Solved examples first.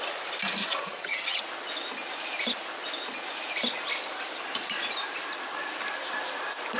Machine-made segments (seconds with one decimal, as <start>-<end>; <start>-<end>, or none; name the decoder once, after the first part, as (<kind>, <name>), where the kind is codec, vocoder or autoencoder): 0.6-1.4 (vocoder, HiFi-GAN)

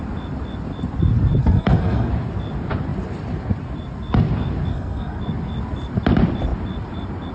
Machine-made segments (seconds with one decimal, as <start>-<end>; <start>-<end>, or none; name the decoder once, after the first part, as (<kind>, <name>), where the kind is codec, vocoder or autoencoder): 1.4-2.1 (codec, SNAC); 4.7-5.2

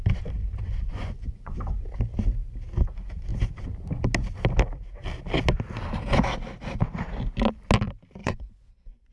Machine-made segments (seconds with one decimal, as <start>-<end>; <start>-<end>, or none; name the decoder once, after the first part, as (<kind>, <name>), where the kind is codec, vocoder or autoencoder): 0.9-1.6 (vocoder, Vocos); 8.2-9.1

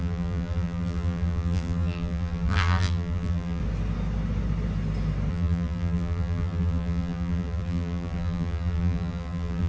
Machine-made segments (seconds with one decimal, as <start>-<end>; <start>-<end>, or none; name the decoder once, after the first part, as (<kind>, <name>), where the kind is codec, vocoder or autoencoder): 0.0-3.6 (vocoder, BigVGAN v2); 5.3-9.7

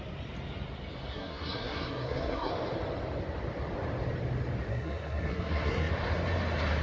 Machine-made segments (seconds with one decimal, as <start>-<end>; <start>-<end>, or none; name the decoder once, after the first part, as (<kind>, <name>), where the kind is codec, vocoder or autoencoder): 1.1-2.5 (codec, SNAC); 4.7-5.9

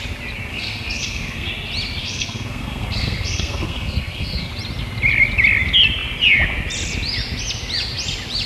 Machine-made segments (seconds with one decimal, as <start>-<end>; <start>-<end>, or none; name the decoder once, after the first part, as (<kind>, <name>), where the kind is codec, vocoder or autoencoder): 0.5-1.5 (codec, SNAC); 2.0-4.5

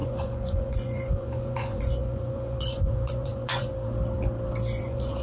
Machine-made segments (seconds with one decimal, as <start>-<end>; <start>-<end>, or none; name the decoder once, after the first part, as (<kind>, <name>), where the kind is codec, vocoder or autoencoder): 0.0-3.7 (vocoder, Vocos); 4.8-5.2